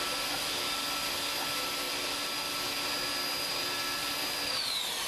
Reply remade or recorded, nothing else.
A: recorded